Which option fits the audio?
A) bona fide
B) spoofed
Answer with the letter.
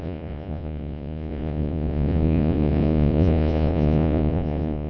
B